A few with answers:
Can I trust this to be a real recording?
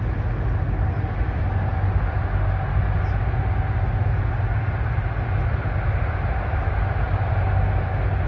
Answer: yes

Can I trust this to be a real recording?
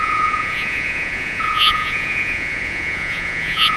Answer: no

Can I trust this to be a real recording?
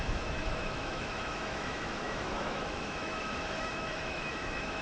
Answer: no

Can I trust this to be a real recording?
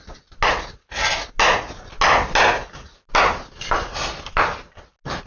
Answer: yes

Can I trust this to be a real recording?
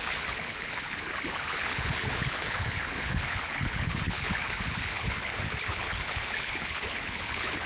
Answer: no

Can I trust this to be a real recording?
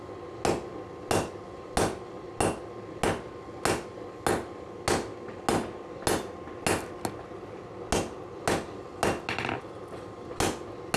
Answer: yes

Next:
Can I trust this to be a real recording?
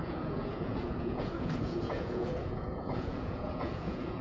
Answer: no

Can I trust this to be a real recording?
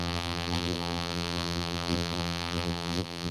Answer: no